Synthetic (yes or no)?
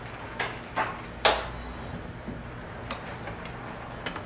no